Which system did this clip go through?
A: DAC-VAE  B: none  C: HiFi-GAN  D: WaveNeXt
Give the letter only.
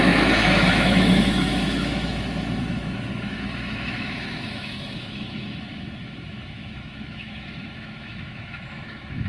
A